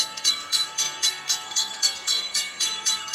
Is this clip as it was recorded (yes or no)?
no